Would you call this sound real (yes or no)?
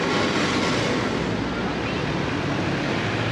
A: yes